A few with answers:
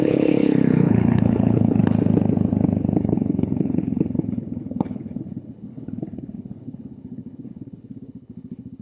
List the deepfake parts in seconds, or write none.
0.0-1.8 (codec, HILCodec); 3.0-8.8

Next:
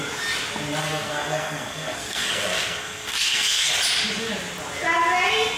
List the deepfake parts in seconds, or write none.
0.8-3.7 (codec, SNAC)

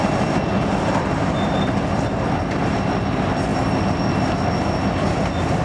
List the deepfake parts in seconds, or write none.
none